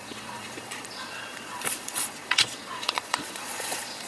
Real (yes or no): no